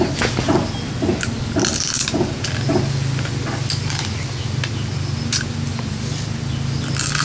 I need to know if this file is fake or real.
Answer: real